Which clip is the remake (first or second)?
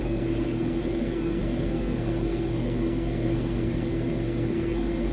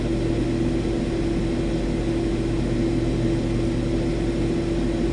first